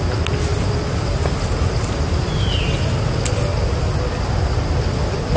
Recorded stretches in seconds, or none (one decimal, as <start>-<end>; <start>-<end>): 0.0-5.4